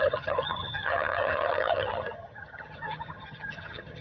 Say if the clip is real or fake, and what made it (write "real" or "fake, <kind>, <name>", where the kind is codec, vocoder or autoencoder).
fake, vocoder, HiFi-GAN